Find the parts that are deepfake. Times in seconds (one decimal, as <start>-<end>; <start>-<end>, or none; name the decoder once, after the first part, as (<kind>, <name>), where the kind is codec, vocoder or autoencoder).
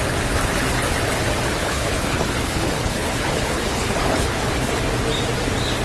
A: 1.6-4.8 (codec, HILCodec)